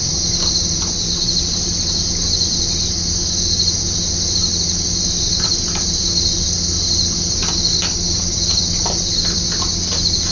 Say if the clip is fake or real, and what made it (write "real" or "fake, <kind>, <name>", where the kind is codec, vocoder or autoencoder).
real